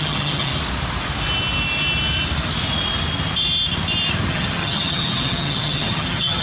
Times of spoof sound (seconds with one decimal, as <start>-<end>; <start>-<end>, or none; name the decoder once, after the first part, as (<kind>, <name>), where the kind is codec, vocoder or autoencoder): 0.0-0.5 (vocoder, HiFi-GAN); 4.3-6.4